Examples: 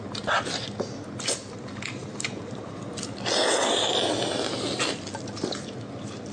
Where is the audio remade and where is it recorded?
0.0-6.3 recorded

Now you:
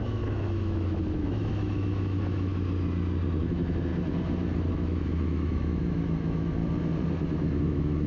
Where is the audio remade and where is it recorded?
0.0-2.5 remade; 2.5-3.4 recorded; 3.4-3.9 remade; 3.9-4.7 recorded; 4.7-6.6 remade; 6.6-7.6 recorded; 7.6-8.1 remade

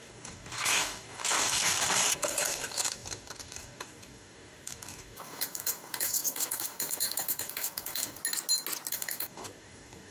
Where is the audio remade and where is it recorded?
0.0-8.2 remade; 8.2-8.9 recorded; 8.9-10.1 remade

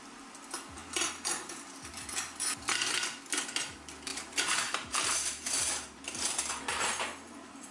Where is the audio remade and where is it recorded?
0.0-4.1 recorded; 4.1-6.5 remade; 6.5-7.7 recorded

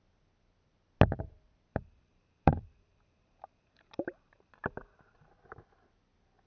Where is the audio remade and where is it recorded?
0.0-1.7 recorded; 1.7-5.3 remade; 5.3-6.5 recorded

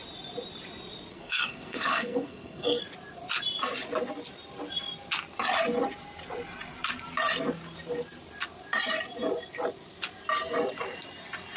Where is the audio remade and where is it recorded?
0.0-1.1 recorded; 1.1-2.8 remade; 2.8-11.6 recorded

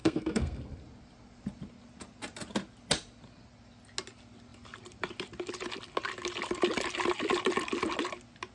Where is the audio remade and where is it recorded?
0.0-0.8 remade; 0.8-8.5 recorded